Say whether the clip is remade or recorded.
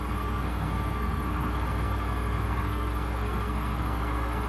remade